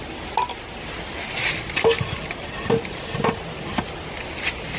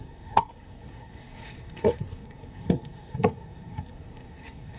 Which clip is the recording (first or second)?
first